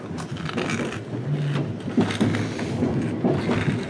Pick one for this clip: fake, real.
real